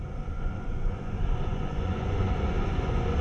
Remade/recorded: remade